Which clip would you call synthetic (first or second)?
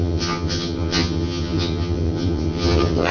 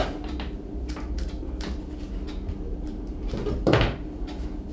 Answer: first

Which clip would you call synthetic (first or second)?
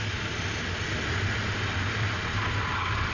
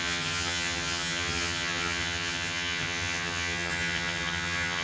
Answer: second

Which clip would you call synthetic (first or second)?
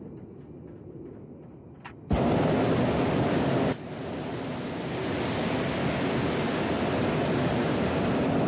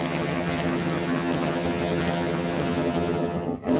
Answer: second